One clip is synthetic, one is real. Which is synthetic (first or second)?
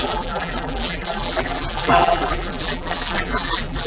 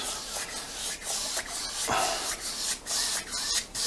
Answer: first